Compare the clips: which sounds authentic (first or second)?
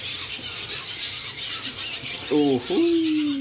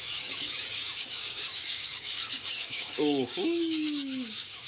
first